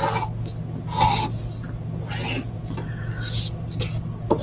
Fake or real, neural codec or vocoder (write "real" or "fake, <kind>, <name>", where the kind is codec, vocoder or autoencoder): real